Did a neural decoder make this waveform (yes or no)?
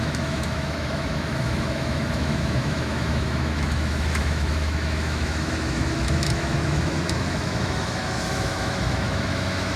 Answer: yes